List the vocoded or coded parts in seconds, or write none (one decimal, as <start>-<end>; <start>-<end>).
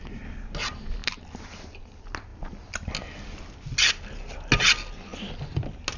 none